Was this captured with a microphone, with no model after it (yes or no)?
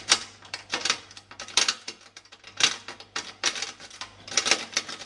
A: no